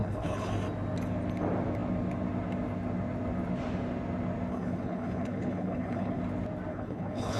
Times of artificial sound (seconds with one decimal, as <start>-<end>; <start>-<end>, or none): 0.0-0.5; 4.5-6.2; 6.7-7.4